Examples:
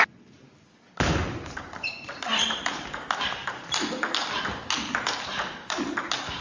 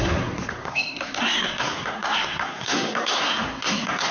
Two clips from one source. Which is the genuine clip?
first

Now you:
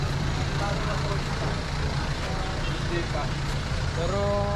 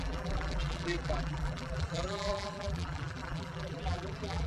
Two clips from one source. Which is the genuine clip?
first